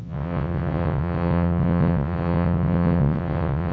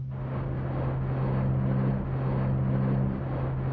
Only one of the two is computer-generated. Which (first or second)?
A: first